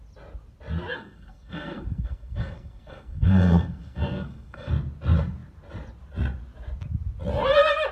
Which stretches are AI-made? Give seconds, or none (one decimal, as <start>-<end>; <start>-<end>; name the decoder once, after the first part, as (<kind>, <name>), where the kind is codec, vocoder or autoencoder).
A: 0.9-4.7 (codec, SNAC)